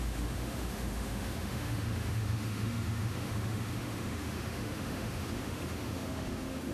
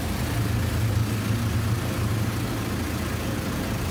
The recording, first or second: second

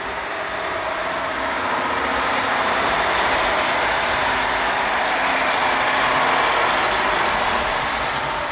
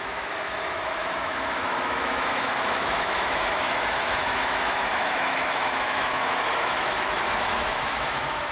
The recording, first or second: first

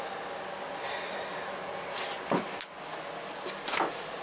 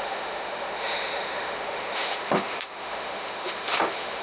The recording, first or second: first